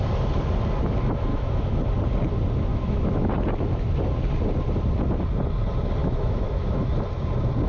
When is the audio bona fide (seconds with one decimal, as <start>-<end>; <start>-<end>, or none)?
0.0-1.3; 1.8-2.7; 3.3-6.0; 6.8-7.7